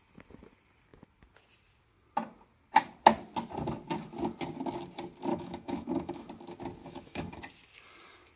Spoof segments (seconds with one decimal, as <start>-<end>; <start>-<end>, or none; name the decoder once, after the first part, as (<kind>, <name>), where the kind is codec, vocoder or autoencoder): 5.3-6.3 (autoencoder, DAC-VAE); 6.8-7.4